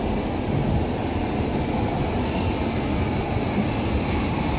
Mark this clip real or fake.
real